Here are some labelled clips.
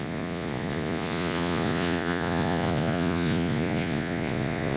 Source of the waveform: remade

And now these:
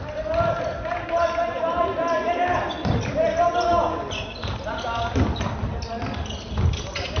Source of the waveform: recorded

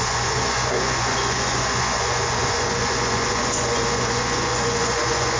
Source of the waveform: remade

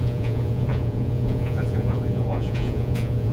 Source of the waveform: remade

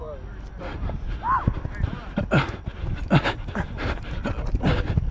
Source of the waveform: recorded